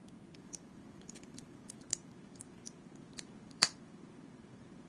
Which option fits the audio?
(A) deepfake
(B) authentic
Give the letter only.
A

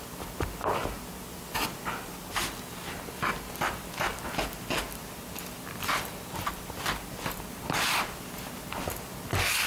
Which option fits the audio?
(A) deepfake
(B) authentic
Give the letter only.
B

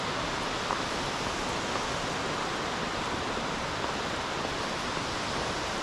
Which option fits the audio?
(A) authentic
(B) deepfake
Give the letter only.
A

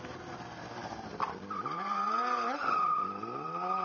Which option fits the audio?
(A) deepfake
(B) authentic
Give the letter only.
A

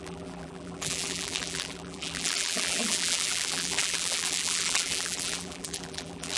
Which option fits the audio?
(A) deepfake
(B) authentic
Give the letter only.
A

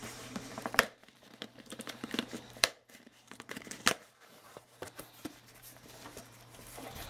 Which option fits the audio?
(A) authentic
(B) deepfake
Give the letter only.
B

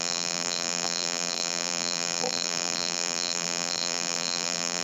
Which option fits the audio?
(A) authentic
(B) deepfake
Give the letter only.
B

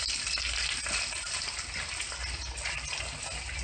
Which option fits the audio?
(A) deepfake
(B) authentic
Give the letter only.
B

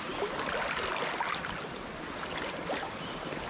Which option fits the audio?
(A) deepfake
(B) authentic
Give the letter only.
B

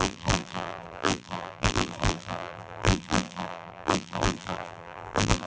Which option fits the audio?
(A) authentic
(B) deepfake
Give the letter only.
B